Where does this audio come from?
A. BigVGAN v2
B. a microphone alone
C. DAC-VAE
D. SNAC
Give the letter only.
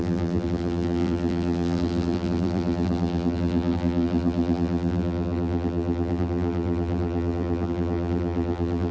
A